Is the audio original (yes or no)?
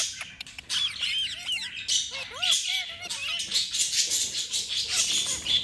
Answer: yes